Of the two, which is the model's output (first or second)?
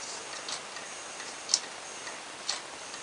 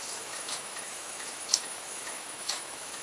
second